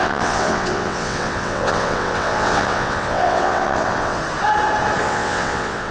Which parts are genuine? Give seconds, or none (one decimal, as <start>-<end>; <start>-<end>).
4.2-5.0